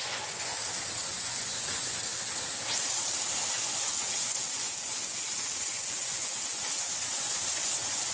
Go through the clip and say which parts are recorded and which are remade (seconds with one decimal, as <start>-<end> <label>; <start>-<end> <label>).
0.0-0.5 remade; 0.5-1.0 recorded; 1.0-2.1 remade; 2.1-3.6 recorded; 3.6-8.1 remade